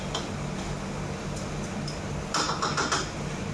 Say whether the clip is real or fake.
real